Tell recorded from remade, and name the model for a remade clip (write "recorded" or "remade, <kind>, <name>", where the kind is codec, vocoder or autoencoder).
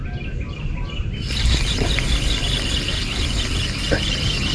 recorded